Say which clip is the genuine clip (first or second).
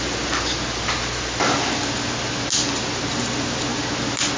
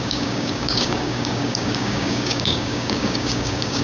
first